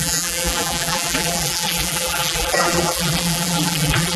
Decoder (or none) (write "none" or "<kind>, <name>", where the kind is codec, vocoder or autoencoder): vocoder, BigVGAN v2